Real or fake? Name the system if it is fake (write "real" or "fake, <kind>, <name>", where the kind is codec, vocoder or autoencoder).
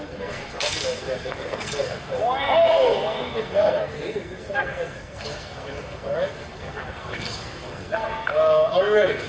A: fake, codec, SNAC